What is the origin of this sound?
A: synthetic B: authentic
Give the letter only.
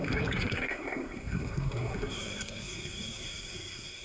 A